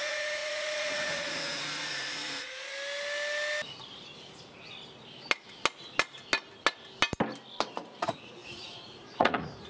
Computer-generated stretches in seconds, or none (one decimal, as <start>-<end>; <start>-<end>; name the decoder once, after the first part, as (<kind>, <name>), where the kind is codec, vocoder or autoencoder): 0.0-2.7 (vocoder, Vocos); 7.7-9.7